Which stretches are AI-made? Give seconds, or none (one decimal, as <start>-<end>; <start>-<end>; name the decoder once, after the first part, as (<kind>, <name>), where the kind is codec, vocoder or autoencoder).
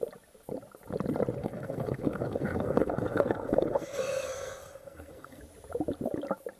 1.4-5.4 (codec, SNAC)